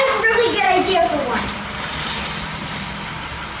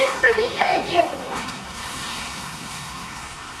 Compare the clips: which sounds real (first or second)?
first